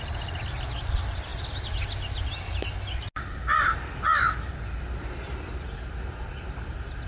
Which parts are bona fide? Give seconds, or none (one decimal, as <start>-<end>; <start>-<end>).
0.0-7.1